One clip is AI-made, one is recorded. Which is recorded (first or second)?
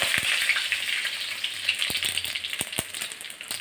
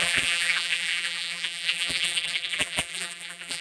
first